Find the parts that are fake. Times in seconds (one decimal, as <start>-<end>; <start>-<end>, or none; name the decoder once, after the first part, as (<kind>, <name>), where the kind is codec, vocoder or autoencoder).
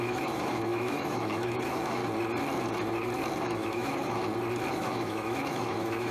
0.0-2.0 (autoencoder, DAC-VAE); 3.4-4.2; 4.7-6.1